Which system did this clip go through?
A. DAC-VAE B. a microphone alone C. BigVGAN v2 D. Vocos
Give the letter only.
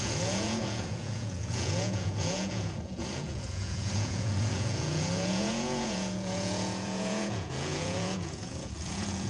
D